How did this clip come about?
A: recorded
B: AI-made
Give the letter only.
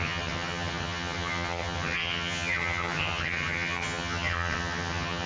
B